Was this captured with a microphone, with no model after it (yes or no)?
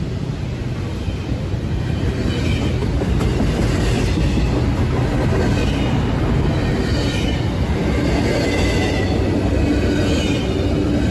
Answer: yes